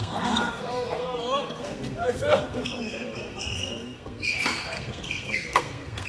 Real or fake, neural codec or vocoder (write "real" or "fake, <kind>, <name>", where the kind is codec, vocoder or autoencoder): fake, codec, SNAC